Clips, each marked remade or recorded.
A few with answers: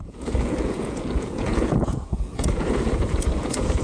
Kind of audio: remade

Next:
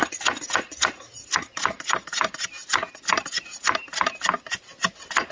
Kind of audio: recorded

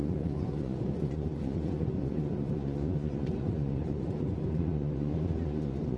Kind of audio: remade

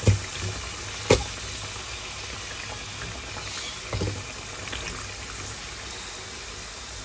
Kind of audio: recorded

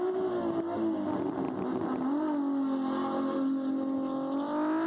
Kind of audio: recorded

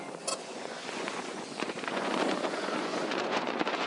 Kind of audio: remade